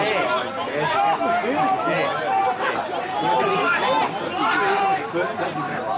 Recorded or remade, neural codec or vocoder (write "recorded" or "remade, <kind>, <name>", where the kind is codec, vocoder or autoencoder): recorded